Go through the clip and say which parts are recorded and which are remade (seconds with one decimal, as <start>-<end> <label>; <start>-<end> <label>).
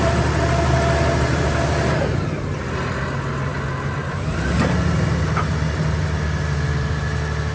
0.0-7.5 recorded